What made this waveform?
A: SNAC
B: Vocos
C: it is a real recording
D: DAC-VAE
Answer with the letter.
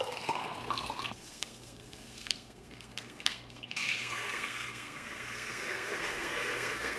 A